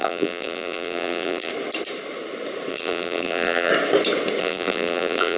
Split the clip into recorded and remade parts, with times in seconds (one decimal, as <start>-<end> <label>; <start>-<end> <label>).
0.0-1.5 remade; 1.5-2.7 recorded; 2.7-3.7 remade; 3.7-4.4 recorded; 4.4-5.4 remade